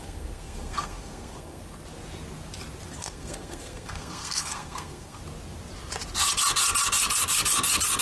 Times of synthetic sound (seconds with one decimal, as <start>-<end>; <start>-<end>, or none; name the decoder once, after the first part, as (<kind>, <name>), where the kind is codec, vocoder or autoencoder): 0.0-1.6 (codec, SNAC); 3.0-5.2